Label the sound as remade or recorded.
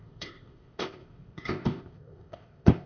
remade